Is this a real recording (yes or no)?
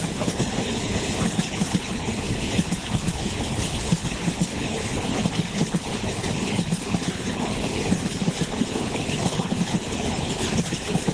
no